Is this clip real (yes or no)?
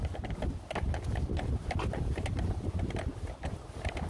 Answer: yes